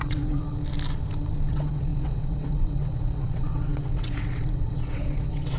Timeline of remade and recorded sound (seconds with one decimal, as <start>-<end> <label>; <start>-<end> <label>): 0.0-0.4 remade; 0.4-1.5 recorded; 1.5-5.6 remade